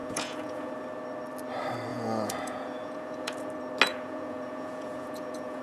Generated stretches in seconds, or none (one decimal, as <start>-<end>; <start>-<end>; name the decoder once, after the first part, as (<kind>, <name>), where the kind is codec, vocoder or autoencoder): 0.0-0.7 (vocoder, Vocos); 1.9-3.5; 3.9-5.6